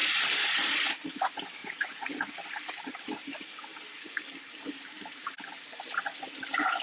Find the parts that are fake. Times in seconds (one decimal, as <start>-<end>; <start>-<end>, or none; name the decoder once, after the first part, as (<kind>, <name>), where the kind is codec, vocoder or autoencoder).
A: 1.6-2.3 (vocoder, Vocos)